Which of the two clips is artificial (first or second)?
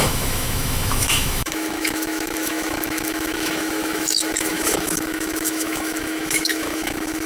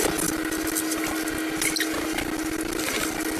first